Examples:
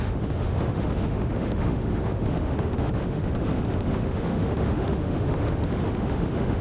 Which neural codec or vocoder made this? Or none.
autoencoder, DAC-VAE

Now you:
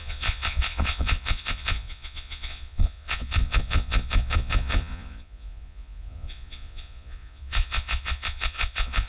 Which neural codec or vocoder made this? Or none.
vocoder, Vocos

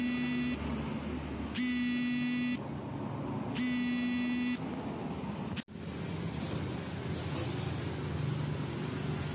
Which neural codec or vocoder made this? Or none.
none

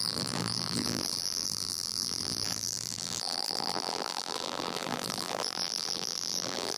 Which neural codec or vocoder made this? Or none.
vocoder, BigVGAN v2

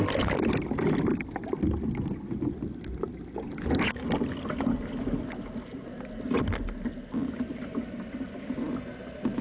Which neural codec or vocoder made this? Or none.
none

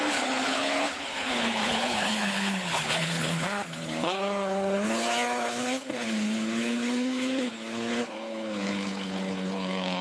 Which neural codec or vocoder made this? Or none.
codec, HILCodec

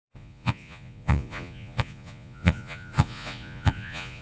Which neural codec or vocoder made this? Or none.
vocoder, Vocos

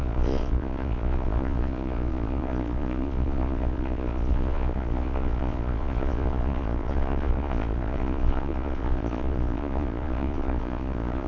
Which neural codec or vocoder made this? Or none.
vocoder, Vocos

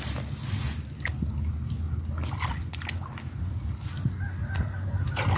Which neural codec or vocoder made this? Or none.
none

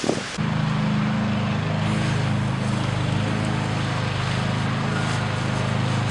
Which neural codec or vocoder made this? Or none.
none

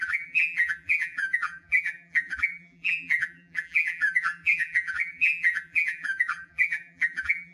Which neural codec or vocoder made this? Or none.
vocoder, BigVGAN v2